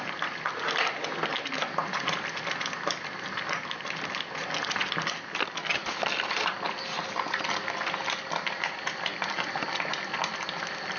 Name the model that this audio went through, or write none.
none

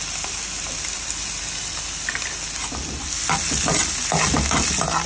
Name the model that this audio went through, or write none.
none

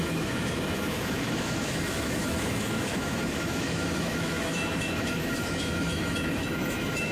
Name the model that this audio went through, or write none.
autoencoder, DAC-VAE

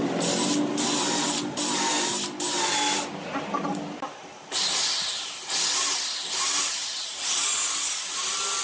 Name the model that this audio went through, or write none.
none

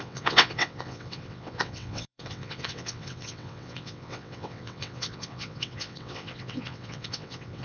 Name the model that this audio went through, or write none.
vocoder, WaveNeXt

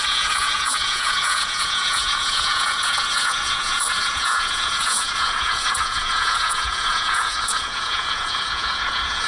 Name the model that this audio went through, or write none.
vocoder, Vocos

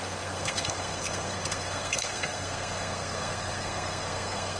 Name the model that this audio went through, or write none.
codec, SNAC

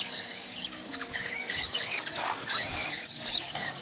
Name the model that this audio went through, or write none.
codec, DAC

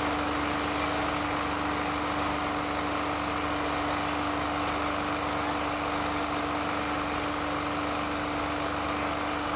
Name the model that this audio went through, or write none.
none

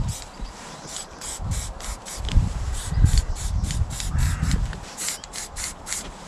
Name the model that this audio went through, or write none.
vocoder, BigVGAN v2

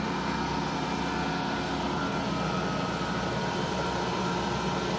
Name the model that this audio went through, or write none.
none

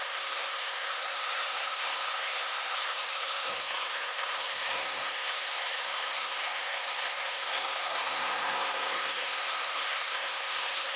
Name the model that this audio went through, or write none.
codec, SNAC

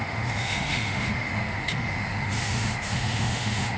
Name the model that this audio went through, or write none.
autoencoder, DAC-VAE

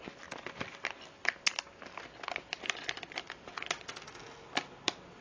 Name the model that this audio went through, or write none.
none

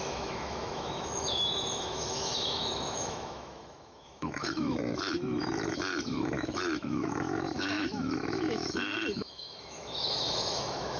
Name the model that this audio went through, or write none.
autoencoder, DAC-VAE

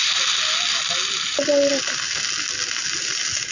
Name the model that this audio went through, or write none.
none